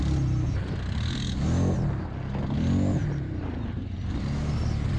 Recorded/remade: recorded